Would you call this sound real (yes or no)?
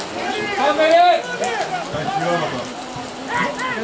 yes